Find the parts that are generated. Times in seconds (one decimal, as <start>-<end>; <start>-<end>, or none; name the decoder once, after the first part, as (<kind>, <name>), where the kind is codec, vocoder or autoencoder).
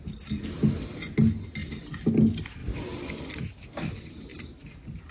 none